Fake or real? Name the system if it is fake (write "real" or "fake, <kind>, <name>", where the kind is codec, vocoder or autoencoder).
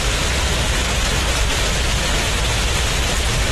real